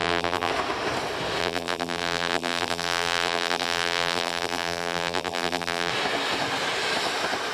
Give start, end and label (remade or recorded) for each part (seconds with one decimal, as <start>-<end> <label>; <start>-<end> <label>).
0.0-0.5 remade; 0.5-1.4 recorded; 1.4-5.9 remade; 5.9-7.5 recorded